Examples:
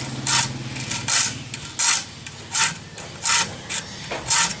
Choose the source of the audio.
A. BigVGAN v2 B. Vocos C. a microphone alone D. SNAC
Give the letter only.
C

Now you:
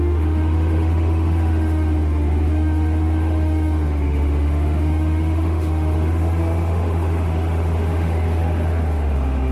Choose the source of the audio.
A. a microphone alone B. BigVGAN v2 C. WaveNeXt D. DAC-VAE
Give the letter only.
D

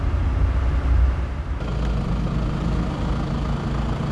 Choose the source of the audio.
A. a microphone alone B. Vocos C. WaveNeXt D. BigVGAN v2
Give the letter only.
A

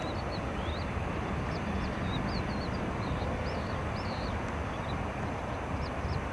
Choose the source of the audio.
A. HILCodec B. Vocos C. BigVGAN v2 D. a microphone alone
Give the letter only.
D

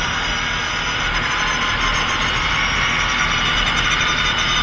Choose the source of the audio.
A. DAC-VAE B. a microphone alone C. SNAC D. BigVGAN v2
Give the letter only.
B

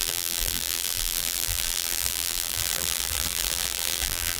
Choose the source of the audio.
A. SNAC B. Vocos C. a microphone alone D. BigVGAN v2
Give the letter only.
D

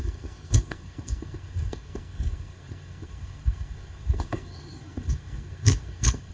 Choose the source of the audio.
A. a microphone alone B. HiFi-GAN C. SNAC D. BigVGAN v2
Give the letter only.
C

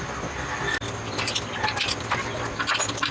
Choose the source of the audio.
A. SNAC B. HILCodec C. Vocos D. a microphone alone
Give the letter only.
D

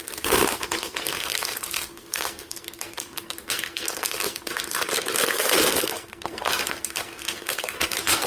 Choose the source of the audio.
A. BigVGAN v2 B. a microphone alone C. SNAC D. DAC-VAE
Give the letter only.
C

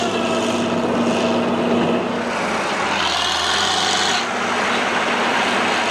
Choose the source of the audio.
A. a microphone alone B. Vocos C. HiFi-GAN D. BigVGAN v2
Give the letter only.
A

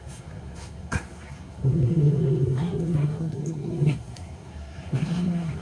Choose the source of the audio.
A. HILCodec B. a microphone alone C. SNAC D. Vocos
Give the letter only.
C